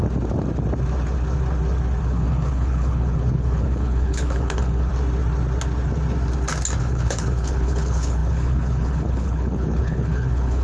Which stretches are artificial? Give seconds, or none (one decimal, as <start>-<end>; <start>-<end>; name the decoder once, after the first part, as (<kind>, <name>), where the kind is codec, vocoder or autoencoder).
2.0-4.9 (codec, HILCodec); 6.8-10.6